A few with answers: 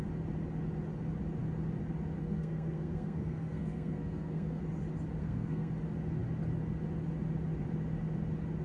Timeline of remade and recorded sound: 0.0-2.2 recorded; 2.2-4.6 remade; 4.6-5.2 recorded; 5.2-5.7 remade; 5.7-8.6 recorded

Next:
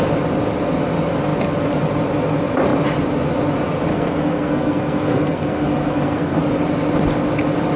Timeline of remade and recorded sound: 0.0-3.9 recorded; 3.9-6.4 remade; 6.4-7.8 recorded